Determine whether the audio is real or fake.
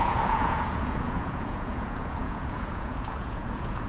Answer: fake